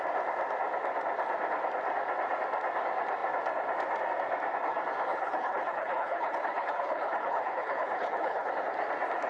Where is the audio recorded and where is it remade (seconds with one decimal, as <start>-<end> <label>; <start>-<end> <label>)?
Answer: 0.0-5.1 recorded; 5.1-8.5 remade; 8.5-9.3 recorded